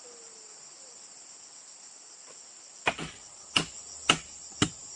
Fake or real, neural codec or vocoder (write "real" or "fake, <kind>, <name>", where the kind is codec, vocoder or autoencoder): real